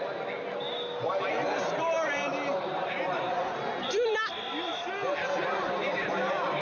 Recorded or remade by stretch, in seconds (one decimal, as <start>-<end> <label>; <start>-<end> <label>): 0.0-0.6 recorded; 0.6-4.2 remade; 4.2-5.5 recorded; 5.5-6.6 remade